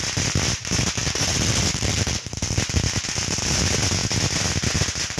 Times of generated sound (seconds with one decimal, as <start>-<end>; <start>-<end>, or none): none